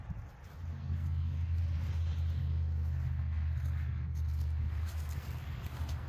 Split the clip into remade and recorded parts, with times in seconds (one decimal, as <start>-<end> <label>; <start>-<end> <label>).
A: 0.0-0.7 recorded; 0.7-1.6 remade; 1.6-2.4 recorded; 2.4-6.1 remade